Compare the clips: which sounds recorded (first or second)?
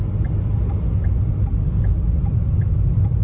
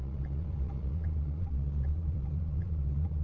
first